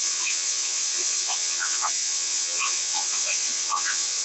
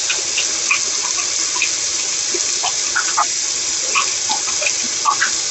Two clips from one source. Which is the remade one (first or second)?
first